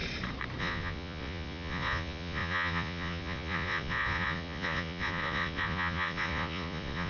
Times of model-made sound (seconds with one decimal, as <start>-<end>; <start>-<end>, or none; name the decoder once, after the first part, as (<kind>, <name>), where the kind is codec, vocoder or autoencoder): 0.6-7.1 (vocoder, Vocos)